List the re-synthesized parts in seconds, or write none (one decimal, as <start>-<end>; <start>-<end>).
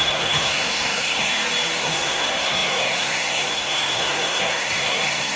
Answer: 0.0-1.3; 1.8-5.4